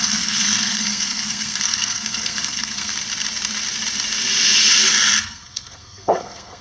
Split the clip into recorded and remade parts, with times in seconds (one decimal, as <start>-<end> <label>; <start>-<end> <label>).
0.0-2.9 remade; 2.9-5.2 recorded; 5.2-6.6 remade